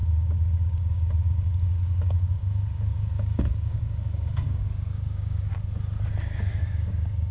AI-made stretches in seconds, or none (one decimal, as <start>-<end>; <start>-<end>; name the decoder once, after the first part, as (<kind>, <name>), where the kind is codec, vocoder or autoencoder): 0.0-5.5 (codec, DAC); 6.1-7.3